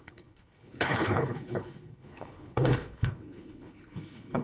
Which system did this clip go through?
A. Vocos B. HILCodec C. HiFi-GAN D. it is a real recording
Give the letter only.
B